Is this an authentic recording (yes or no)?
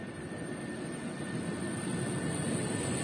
yes